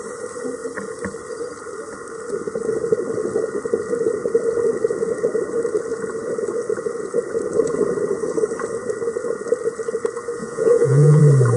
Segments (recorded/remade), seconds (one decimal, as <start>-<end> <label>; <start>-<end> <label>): 0.0-10.4 recorded; 10.4-11.2 remade; 11.2-11.6 recorded